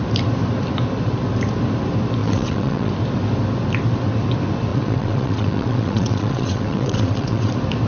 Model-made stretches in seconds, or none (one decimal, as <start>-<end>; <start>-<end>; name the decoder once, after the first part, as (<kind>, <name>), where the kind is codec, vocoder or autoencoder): 2.2-2.9 (vocoder, WaveNeXt); 4.7-7.5